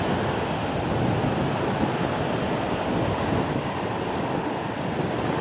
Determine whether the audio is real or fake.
real